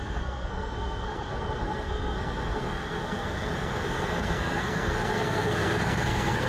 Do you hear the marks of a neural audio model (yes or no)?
yes